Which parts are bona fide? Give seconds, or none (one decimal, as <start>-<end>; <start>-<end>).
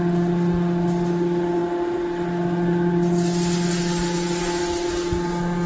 0.0-5.7